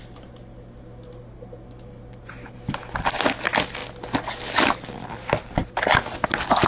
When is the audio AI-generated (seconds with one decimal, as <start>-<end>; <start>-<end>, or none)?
none